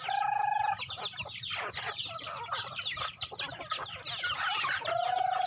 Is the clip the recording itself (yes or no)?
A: yes